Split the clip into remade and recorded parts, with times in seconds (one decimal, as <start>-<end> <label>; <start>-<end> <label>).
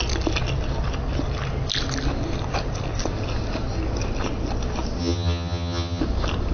0.0-5.0 recorded; 5.0-6.0 remade; 6.0-6.5 recorded